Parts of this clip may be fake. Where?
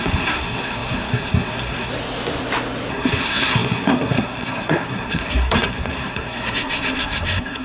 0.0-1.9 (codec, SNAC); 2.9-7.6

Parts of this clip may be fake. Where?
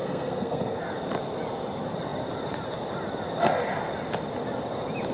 0.0-0.8 (codec, SNAC)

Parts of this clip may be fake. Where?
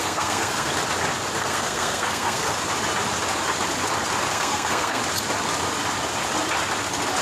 0.0-0.7 (codec, SNAC); 1.4-2.5; 4.3-5.0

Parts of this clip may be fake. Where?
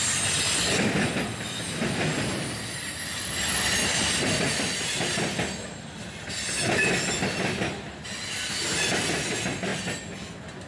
none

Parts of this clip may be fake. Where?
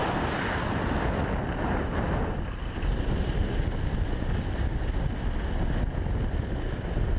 none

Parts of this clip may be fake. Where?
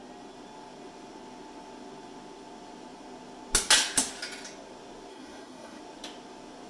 5.1-5.8 (codec, SNAC)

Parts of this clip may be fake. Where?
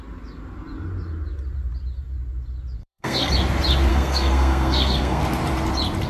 2.8-3.3 (codec, SNAC); 3.9-5.2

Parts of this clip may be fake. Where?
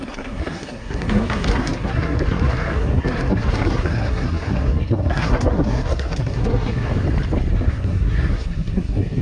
0.0-6.9 (codec, SNAC); 7.5-9.2